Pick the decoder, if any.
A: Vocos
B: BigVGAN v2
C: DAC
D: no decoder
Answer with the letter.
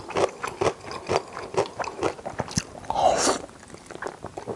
D